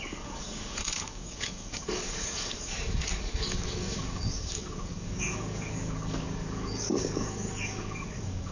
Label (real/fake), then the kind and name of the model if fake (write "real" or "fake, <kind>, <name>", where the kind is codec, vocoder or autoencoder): fake, codec, DAC